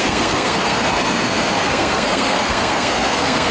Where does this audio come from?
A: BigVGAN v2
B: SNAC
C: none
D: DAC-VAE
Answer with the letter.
B